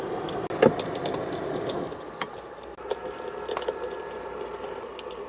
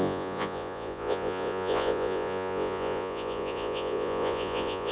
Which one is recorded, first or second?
first